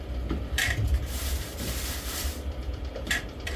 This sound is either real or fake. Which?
fake